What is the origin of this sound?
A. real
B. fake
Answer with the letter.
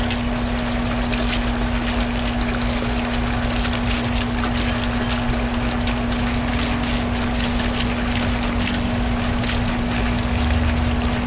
A